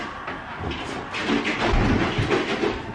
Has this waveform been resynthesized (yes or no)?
no